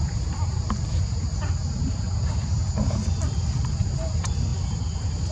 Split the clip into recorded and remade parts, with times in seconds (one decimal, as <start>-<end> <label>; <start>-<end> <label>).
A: 0.0-5.3 recorded